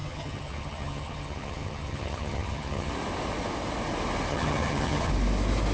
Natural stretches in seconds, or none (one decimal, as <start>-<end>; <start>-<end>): 2.9-4.3; 5.1-5.7